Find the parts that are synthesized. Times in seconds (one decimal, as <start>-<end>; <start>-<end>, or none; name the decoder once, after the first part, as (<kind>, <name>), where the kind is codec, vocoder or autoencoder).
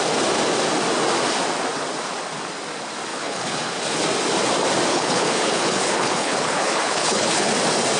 3.1-3.8 (codec, HILCodec); 4.9-7.5